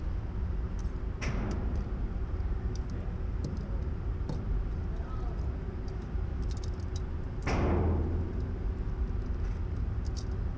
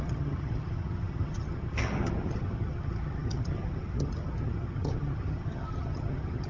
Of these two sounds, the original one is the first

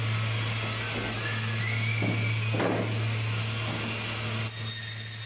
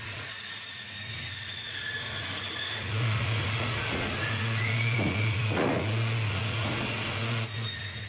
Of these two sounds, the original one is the first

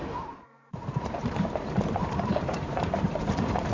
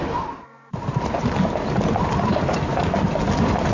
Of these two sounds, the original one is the second